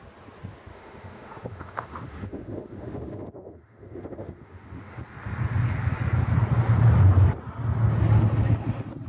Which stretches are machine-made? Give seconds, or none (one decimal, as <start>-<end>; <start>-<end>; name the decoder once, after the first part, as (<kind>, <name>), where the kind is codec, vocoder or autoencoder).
0.7-4.9 (autoencoder, DAC-VAE)